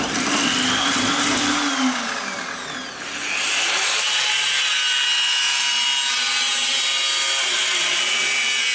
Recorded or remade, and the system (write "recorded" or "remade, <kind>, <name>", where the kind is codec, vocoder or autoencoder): recorded